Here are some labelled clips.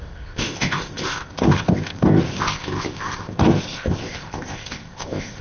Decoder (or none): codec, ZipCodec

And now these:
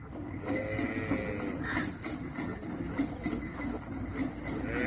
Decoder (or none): none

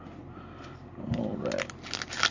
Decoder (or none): none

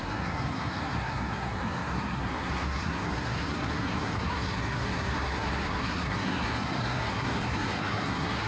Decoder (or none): codec, SNAC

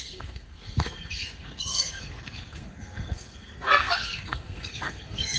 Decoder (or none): codec, SNAC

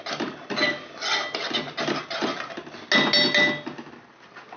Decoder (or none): none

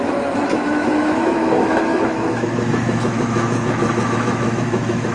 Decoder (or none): autoencoder, DAC-VAE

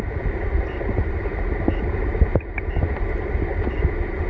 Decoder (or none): none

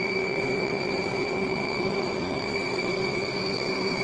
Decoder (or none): vocoder, WaveNeXt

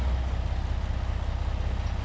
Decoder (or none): none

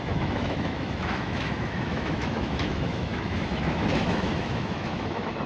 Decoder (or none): autoencoder, DAC-VAE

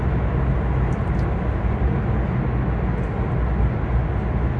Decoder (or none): none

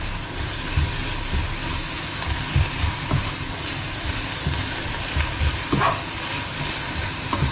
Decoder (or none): none